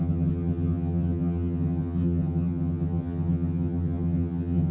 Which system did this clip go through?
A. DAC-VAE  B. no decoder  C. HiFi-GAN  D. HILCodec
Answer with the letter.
C